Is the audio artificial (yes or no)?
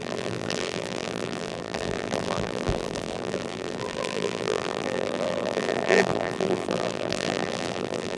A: yes